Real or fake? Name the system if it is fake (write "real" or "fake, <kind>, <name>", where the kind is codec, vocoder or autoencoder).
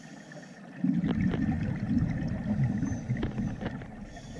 real